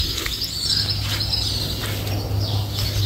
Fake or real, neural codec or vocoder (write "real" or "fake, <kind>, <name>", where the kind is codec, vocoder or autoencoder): real